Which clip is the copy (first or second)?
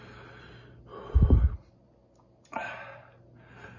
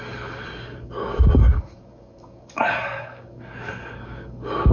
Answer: second